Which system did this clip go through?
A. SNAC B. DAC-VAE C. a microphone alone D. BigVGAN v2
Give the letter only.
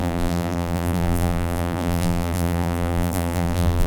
D